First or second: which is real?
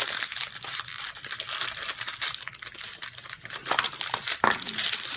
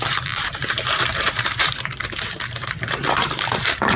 first